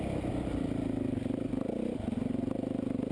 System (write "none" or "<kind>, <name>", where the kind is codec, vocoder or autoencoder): none